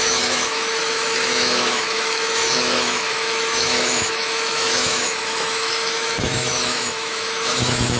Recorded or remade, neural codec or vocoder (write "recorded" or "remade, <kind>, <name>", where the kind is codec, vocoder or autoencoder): remade, autoencoder, DAC-VAE